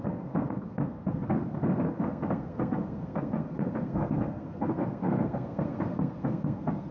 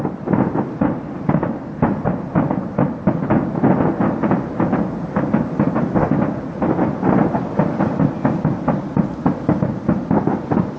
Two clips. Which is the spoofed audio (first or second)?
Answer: first